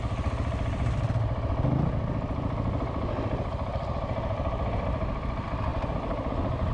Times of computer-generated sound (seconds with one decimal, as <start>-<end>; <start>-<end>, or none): none